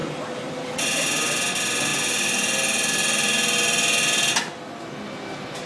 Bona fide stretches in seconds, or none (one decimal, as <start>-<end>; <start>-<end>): 0.8-5.7